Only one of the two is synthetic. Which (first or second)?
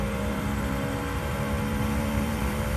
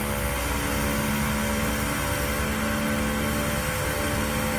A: first